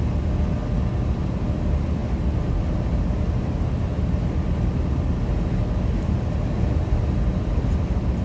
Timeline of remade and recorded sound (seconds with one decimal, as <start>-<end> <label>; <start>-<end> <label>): 0.0-8.2 recorded